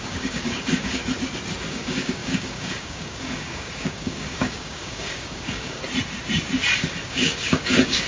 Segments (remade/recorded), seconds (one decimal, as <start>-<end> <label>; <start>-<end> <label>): 0.0-1.0 remade; 1.0-1.7 recorded; 1.7-5.8 remade; 5.8-7.1 recorded; 7.1-8.1 remade